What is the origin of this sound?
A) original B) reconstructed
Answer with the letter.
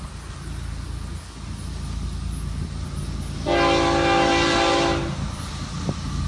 A